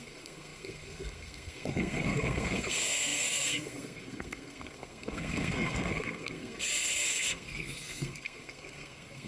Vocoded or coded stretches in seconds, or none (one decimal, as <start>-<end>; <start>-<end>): 0.0-9.3